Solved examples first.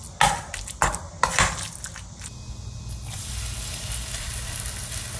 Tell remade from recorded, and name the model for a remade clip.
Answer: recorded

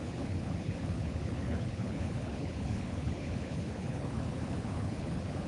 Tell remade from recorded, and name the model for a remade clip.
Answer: remade, codec, HILCodec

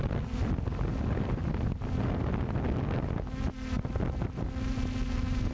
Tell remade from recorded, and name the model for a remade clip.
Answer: recorded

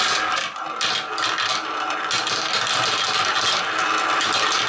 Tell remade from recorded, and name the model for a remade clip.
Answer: recorded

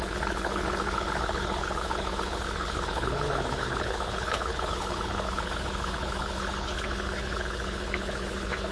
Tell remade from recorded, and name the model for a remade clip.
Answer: remade, codec, HILCodec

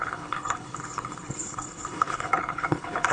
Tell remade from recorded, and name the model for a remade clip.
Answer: remade, codec, HILCodec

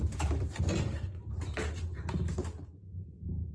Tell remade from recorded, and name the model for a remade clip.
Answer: recorded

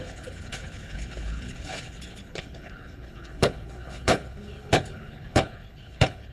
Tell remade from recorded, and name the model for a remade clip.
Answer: remade, codec, HILCodec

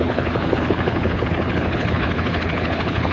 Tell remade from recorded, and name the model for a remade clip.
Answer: remade, codec, HILCodec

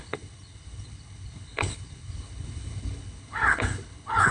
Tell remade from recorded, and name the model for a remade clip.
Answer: remade, codec, HILCodec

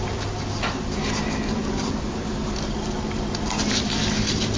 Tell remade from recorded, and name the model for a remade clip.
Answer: recorded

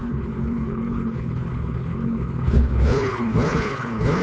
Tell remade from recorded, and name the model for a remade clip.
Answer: remade, codec, HILCodec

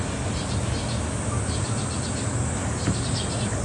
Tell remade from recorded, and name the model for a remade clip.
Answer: recorded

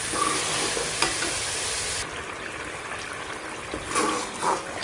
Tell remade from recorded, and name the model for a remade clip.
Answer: recorded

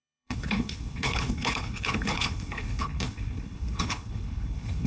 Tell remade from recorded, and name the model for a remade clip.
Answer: remade, codec, HILCodec